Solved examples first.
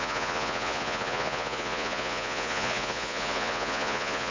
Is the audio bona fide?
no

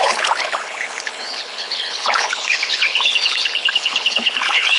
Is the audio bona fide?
no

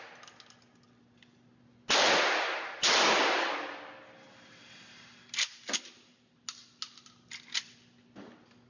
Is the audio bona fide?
yes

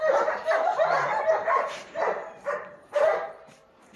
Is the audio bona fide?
no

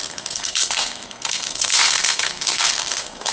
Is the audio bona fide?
no